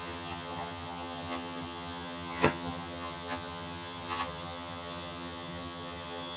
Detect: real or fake fake